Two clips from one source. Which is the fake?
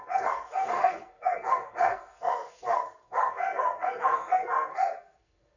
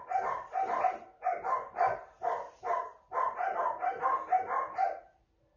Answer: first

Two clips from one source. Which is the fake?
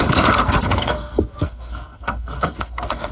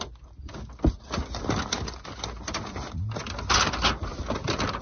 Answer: first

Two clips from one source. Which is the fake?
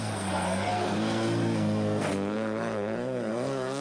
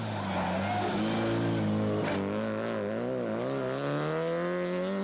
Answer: first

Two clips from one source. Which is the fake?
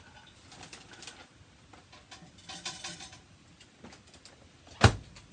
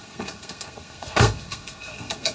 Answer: second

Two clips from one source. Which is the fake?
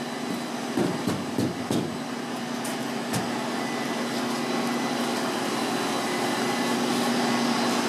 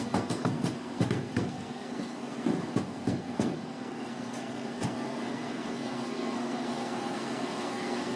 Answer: second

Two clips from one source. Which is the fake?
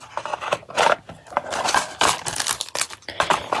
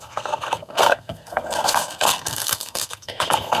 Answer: second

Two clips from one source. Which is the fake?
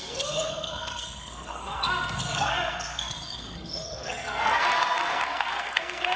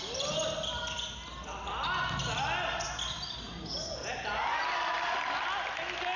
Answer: first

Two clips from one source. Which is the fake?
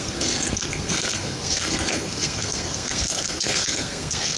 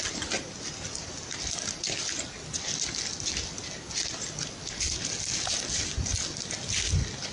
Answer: first